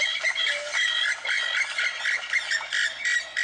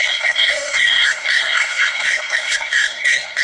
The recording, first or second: first